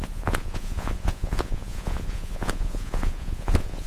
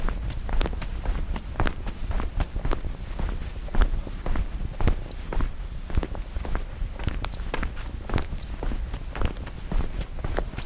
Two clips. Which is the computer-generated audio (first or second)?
first